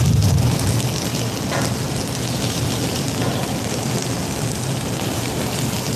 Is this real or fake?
real